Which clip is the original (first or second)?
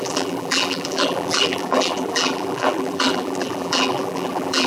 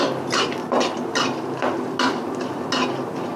second